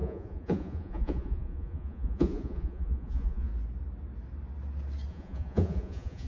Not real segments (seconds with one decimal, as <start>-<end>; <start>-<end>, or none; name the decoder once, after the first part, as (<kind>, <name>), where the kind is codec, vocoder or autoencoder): 0.0-3.5 (vocoder, Vocos); 5.1-6.3